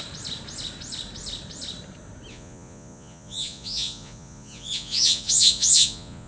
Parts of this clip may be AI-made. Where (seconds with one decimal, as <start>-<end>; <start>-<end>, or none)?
2.3-6.3